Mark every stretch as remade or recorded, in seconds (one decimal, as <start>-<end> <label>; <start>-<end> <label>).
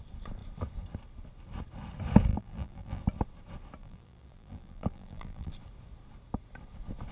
0.0-2.3 recorded; 2.3-3.0 remade; 3.0-3.8 recorded; 3.8-5.5 remade; 5.5-7.1 recorded